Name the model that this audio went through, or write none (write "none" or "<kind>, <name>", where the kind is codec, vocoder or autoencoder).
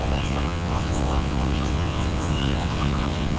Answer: vocoder, WaveNeXt